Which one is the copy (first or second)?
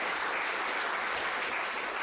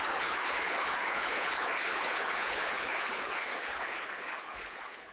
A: second